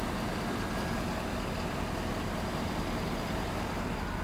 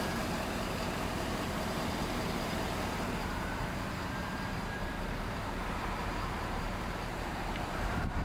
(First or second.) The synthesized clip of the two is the second